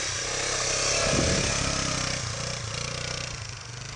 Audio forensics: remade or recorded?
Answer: recorded